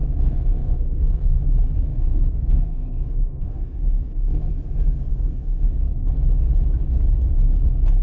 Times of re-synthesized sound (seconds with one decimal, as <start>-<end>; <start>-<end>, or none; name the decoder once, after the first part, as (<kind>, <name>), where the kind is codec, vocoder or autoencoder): 0.0-1.4 (codec, SNAC); 1.9-4.5; 5.1-5.7

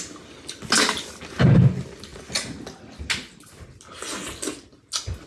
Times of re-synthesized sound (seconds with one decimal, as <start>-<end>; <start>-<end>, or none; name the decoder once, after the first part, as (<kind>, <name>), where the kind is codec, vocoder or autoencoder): none